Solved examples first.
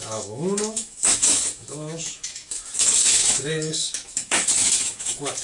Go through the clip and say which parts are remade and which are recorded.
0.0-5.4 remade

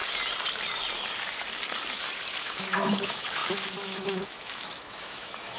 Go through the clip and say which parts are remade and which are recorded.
0.0-2.4 recorded; 2.4-5.6 remade

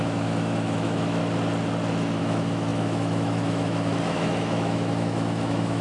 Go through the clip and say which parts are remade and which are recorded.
0.0-1.2 remade; 1.2-2.2 recorded; 2.2-5.8 remade

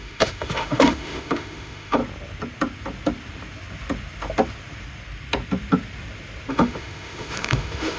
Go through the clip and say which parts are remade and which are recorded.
0.0-2.0 remade; 2.0-6.5 recorded; 6.5-8.0 remade

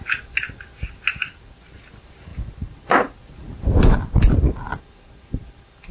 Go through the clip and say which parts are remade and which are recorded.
0.0-5.9 recorded

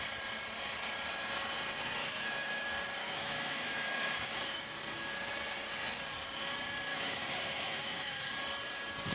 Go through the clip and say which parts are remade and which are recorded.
0.0-2.0 recorded; 2.0-2.6 remade; 2.6-3.0 recorded; 3.0-4.6 remade; 4.6-6.9 recorded; 6.9-8.3 remade; 8.3-9.1 recorded

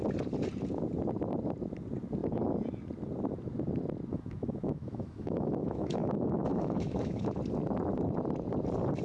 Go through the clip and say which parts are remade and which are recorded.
0.0-4.1 recorded; 4.1-7.4 remade; 7.4-9.0 recorded

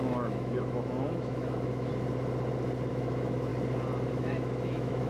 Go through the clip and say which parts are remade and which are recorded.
0.0-1.9 remade; 1.9-2.9 recorded; 2.9-3.5 remade; 3.5-4.1 recorded; 4.1-5.1 remade